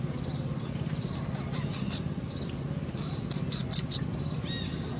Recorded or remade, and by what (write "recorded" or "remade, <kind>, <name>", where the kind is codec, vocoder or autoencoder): recorded